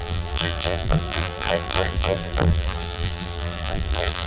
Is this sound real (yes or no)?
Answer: no